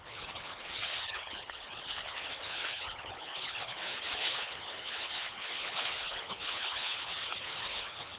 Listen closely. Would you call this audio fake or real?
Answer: fake